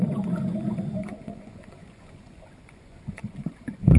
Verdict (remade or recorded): remade